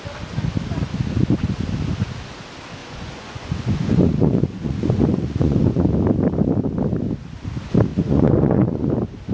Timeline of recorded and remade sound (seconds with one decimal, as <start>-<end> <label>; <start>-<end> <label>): 0.0-2.8 recorded; 2.8-5.9 remade; 5.9-7.9 recorded; 7.9-8.9 remade; 8.9-9.3 recorded